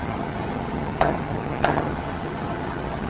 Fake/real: fake